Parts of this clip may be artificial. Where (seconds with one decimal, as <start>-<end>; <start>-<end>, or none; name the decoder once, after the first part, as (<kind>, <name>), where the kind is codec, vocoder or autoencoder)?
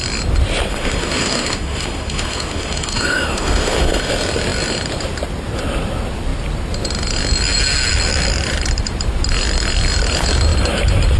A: 0.7-4.1 (autoencoder, DAC-VAE)